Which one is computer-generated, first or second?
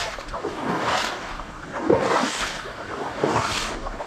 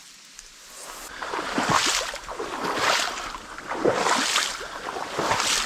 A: first